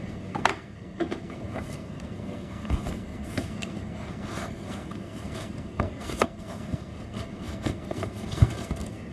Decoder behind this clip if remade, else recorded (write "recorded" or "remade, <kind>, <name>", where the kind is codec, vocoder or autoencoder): remade, codec, SNAC